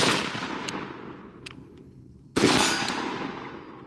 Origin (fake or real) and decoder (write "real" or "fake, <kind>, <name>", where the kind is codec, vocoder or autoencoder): real